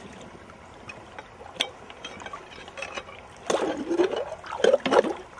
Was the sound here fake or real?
real